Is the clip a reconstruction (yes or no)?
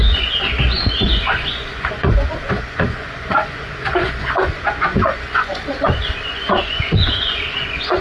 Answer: yes